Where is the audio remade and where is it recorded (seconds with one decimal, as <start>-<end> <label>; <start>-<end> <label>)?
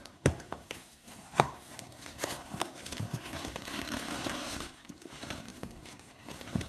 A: 0.0-6.7 remade